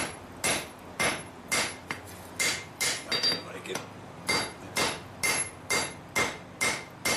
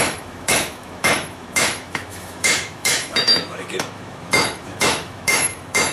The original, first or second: first